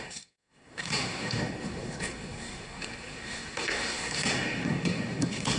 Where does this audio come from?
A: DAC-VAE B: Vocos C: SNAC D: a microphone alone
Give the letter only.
C